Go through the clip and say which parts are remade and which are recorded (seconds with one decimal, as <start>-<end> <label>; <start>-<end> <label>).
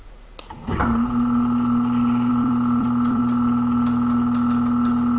0.0-2.3 recorded; 2.3-3.2 remade; 3.2-5.2 recorded